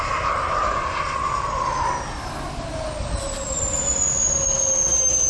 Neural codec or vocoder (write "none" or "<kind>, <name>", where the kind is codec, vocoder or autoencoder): none